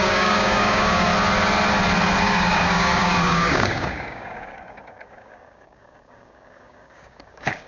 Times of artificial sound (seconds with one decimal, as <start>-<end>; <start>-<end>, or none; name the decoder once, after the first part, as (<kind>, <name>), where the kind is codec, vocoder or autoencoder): 0.0-1.1 (codec, DAC); 2.2-7.7